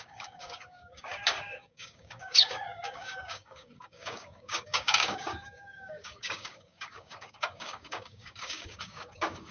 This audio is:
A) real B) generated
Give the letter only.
B